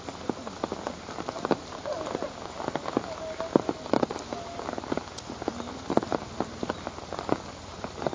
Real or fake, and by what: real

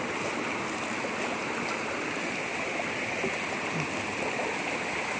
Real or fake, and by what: real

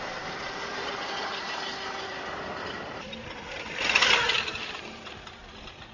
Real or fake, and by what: real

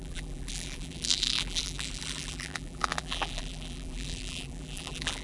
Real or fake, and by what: fake, vocoder, BigVGAN v2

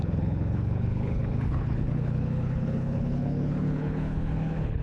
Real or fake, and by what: fake, codec, HILCodec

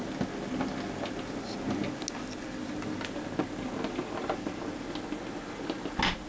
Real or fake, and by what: real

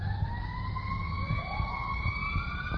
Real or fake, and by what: real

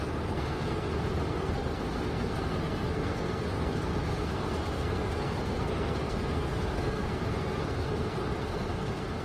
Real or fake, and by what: fake, codec, SNAC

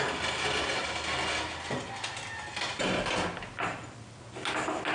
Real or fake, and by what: real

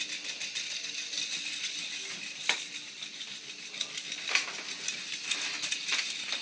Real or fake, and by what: real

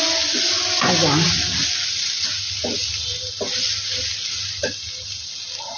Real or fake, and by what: real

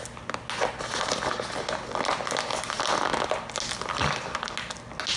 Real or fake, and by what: real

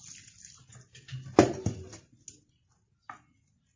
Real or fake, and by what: real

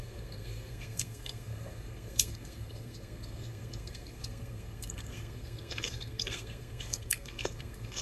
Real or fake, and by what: fake, codec, SNAC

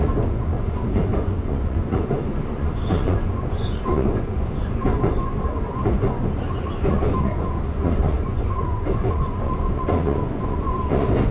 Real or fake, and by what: fake, vocoder, Vocos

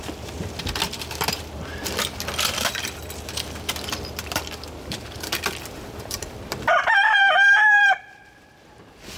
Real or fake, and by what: fake, vocoder, BigVGAN v2